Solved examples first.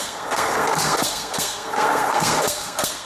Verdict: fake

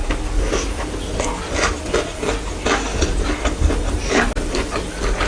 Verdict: real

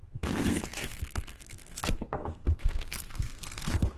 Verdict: fake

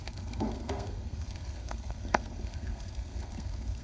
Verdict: fake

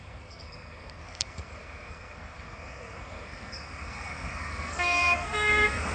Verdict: fake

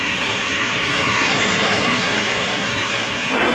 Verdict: fake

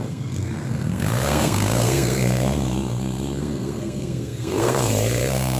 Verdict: fake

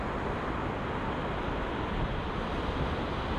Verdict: real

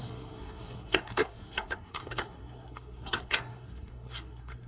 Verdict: fake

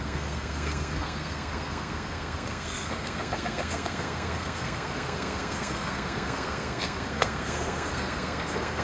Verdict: fake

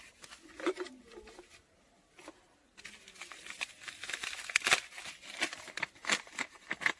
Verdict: real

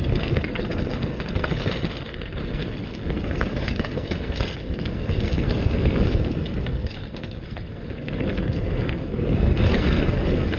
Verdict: fake